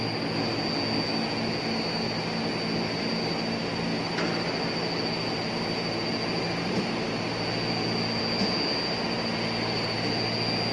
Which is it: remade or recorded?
recorded